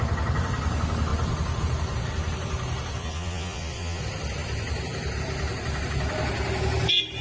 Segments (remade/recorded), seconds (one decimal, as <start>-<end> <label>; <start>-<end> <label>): 0.0-3.0 recorded; 3.0-4.0 remade; 4.0-7.2 recorded